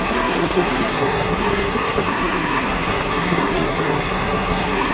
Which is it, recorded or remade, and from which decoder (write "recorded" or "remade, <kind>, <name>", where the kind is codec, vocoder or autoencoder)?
remade, codec, SNAC